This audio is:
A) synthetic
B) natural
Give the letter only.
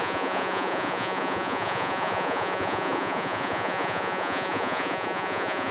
A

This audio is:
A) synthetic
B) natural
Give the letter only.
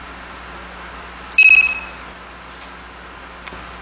B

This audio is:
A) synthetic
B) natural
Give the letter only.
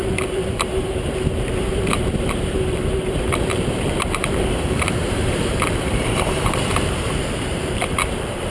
A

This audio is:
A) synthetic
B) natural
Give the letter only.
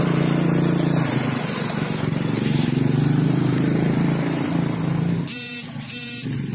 A